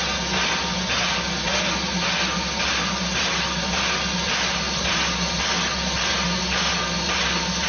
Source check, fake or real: real